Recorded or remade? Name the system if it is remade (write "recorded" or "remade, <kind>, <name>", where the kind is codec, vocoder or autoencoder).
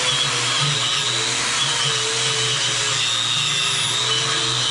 recorded